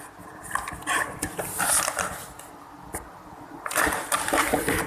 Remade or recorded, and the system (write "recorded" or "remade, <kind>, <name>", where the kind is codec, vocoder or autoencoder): recorded